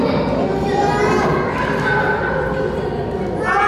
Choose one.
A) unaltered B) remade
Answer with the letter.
A